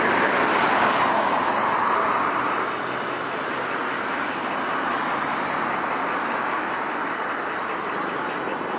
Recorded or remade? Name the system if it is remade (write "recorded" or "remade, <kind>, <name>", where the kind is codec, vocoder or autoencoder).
recorded